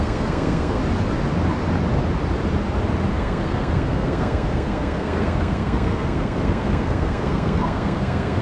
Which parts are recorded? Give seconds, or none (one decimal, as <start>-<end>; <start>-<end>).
0.8-3.1